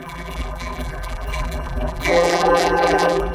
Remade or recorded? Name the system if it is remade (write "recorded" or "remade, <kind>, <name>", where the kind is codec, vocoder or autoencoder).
remade, vocoder, BigVGAN v2